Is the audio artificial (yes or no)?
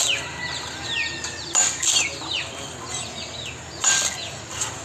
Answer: no